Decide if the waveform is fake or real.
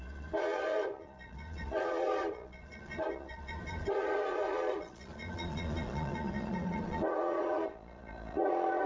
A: fake